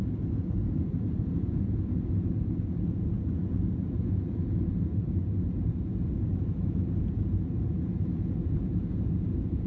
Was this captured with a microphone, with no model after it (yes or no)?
no